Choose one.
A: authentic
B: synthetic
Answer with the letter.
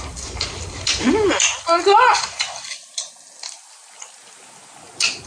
A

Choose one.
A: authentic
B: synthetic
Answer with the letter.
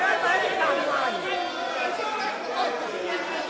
A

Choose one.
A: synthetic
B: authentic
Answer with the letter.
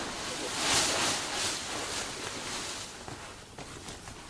B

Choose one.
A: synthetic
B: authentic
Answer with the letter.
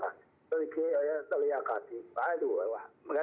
B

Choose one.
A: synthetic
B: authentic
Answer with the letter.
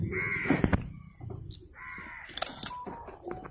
B